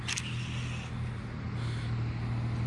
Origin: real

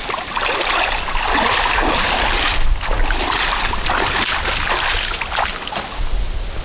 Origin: real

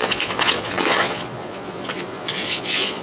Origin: fake